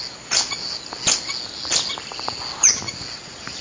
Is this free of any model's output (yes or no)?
yes